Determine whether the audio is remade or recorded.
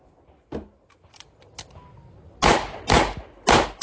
recorded